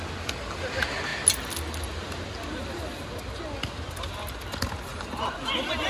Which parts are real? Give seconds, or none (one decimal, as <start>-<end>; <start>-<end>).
0.0-4.9; 5.5-5.9

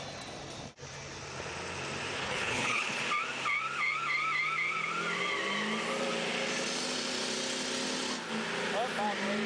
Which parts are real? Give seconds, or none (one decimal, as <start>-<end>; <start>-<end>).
0.0-2.2; 3.0-9.5

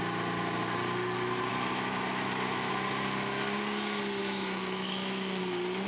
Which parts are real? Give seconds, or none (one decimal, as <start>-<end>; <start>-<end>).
0.0-1.5; 2.7-4.2; 5.4-5.9